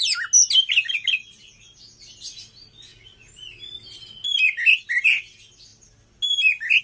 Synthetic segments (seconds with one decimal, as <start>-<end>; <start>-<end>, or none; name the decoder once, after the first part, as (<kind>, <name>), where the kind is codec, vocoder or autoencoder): none